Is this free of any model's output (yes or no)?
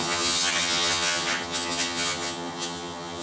no